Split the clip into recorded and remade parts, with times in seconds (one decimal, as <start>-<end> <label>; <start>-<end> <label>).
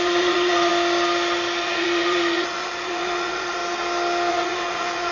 0.0-0.7 remade; 0.7-1.6 recorded; 1.6-3.6 remade; 3.6-4.3 recorded; 4.3-5.1 remade